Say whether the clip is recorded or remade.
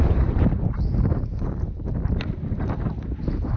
recorded